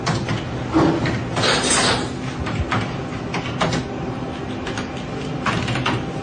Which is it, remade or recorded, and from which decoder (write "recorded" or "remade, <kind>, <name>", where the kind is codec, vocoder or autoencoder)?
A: recorded